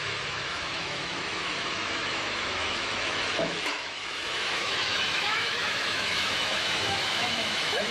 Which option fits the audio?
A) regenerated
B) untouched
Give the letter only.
A